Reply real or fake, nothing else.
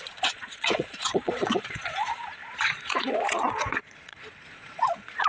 fake